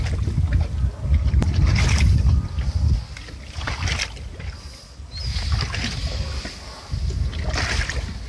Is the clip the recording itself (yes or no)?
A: yes